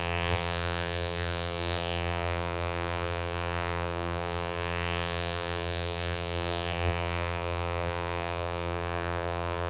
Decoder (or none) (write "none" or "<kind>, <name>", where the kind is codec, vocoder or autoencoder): vocoder, BigVGAN v2